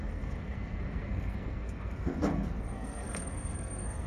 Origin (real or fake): fake